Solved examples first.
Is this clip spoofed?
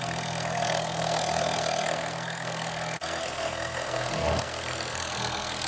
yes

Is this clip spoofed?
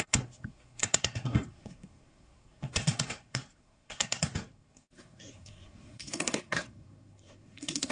yes